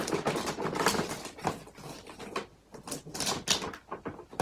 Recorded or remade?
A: recorded